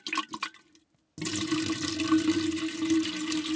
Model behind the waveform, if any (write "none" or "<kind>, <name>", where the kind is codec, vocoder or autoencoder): none